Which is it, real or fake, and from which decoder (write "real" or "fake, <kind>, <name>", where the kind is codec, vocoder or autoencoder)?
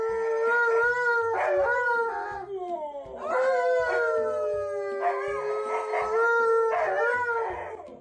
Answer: real